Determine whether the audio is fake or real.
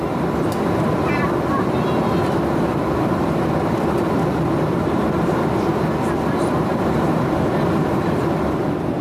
fake